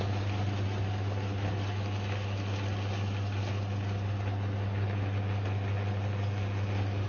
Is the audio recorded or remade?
recorded